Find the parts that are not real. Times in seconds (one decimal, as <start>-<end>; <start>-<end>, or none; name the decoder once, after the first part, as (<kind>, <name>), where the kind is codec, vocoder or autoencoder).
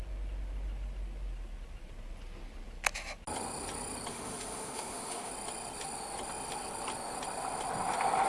4.1-5.3 (autoencoder, DAC-VAE)